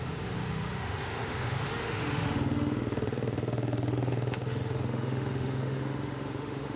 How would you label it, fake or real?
fake